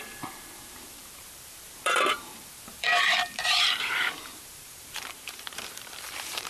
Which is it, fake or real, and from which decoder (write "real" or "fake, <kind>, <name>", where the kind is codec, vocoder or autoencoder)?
fake, vocoder, BigVGAN v2